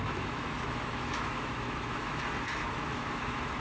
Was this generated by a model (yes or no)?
yes